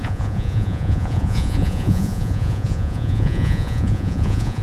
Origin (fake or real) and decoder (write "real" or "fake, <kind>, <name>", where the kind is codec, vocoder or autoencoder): fake, vocoder, Vocos